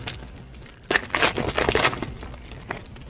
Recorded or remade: recorded